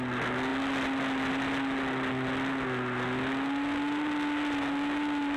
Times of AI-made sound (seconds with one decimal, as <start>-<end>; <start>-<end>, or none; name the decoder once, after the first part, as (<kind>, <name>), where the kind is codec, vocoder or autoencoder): none